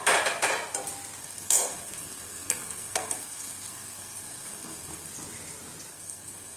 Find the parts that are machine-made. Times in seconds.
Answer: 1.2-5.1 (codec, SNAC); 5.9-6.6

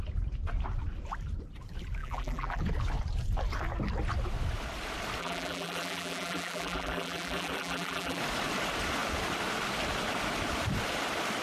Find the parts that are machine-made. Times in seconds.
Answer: 2.0-2.6 (vocoder, BigVGAN v2); 5.2-8.2

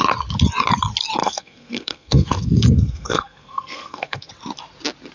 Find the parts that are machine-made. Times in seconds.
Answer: 1.2-4.3 (codec, SNAC)

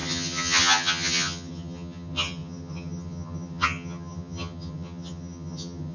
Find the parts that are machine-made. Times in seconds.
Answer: 0.0-5.9 (vocoder, HiFi-GAN)

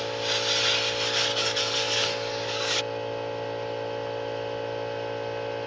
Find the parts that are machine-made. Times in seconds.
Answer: 1.3-2.8 (codec, DAC)

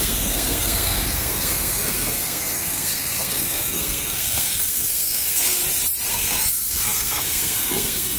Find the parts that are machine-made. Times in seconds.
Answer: 0.0-5.6 (codec, SNAC); 6.1-8.2

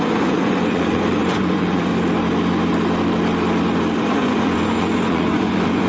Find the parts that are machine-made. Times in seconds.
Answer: 0.0-1.9 (vocoder, Vocos); 4.0-5.9